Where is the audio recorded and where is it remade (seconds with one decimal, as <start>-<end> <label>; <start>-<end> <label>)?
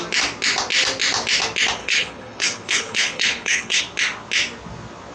0.0-1.8 recorded; 1.8-3.8 remade; 3.8-5.1 recorded